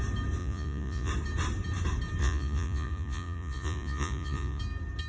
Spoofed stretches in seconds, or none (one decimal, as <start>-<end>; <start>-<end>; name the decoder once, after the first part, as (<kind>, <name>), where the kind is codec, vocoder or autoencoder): 0.4-1.1 (vocoder, Vocos); 2.2-4.6

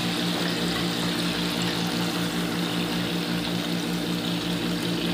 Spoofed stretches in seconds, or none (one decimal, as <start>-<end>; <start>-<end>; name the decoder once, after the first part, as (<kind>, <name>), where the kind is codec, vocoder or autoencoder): none

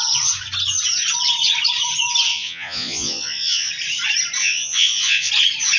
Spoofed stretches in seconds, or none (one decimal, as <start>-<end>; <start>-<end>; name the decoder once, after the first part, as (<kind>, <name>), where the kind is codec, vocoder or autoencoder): 2.3-3.7 (vocoder, Vocos); 4.4-5.3

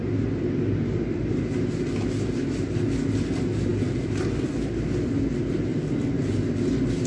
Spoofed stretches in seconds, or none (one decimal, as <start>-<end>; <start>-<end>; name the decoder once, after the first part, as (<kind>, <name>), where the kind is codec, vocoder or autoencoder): none